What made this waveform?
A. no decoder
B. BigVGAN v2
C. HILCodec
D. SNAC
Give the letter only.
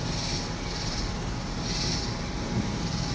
B